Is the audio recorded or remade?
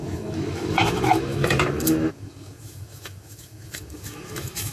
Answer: remade